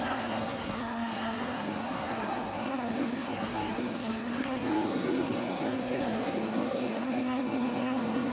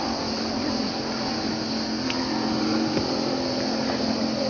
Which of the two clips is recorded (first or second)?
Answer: second